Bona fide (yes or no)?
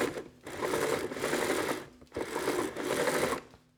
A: yes